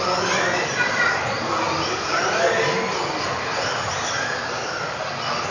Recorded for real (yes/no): yes